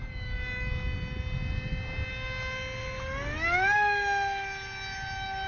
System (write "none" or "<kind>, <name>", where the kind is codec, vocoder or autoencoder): none